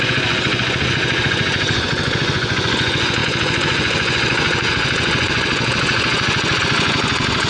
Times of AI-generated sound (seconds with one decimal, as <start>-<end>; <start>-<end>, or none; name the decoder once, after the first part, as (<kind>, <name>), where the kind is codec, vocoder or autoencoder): 0.0-7.5 (vocoder, Vocos)